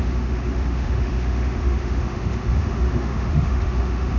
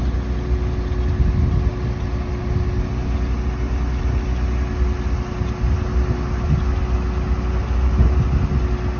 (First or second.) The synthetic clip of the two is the first